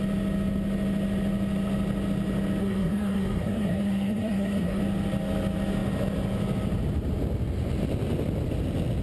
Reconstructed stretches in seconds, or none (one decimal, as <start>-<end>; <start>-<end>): 2.6-4.8